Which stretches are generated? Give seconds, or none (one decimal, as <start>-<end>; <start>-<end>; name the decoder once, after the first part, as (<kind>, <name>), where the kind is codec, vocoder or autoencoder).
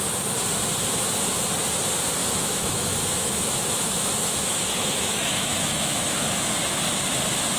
2.2-6.5 (autoencoder, DAC-VAE)